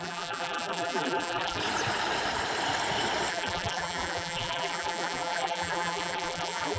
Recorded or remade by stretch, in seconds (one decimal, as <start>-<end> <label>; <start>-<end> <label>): 0.0-1.6 remade; 1.6-3.3 recorded; 3.3-6.8 remade